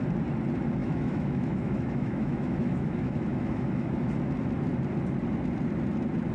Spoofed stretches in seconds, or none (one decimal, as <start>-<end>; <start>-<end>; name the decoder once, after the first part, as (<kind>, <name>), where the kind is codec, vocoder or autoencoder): 0.8-3.9 (autoencoder, DAC-VAE)